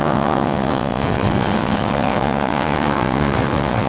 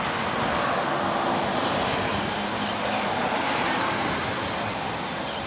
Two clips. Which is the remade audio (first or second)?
first